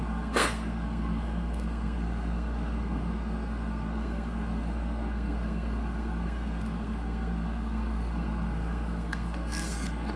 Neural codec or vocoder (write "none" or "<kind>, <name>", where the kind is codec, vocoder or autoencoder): codec, SNAC